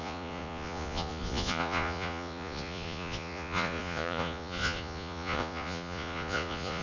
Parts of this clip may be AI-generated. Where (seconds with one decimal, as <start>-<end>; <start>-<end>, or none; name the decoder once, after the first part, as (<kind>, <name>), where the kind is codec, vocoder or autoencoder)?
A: 0.0-6.8 (vocoder, Vocos)